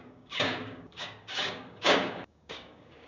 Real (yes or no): no